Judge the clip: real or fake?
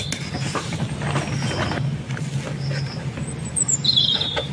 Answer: real